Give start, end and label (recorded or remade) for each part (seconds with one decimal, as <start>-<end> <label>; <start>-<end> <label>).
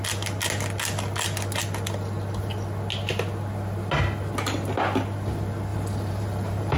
0.0-5.7 recorded; 5.7-6.8 remade